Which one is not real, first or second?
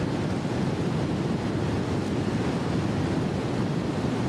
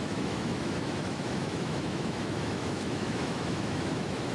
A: second